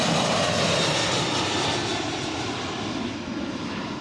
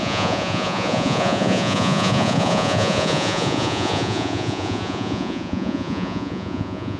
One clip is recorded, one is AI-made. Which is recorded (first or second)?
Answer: first